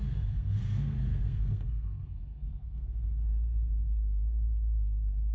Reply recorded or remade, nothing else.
remade